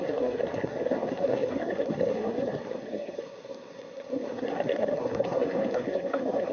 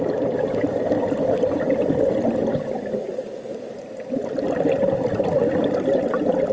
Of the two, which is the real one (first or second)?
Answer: second